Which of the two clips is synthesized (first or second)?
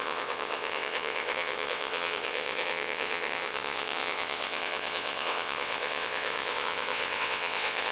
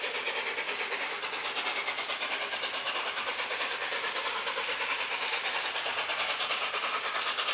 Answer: first